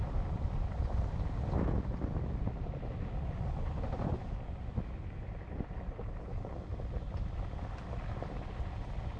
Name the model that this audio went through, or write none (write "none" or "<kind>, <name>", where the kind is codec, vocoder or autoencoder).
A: none